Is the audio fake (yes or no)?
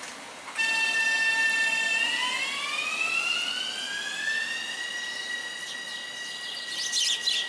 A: no